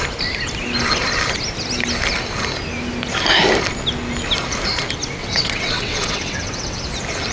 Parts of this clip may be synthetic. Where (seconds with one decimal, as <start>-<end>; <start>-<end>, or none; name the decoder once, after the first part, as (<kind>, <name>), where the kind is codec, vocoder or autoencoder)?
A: 5.2-6.8 (vocoder, WaveNeXt)